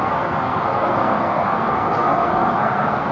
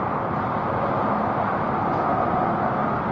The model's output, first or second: first